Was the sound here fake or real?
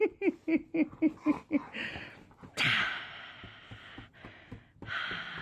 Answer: real